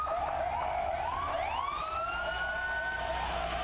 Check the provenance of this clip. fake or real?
real